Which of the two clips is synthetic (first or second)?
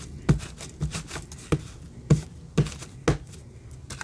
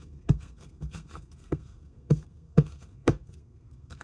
second